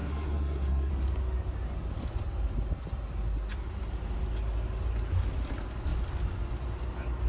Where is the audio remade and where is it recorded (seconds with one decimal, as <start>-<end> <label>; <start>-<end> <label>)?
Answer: 0.0-0.9 remade; 0.9-7.3 recorded